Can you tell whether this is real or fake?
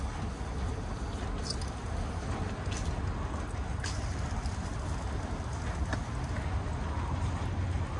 real